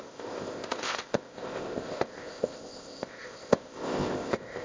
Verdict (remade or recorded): remade